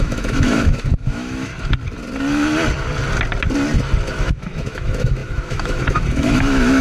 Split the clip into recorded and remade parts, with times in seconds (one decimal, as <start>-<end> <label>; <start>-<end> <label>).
0.0-1.5 remade; 1.5-4.2 recorded; 4.2-6.8 remade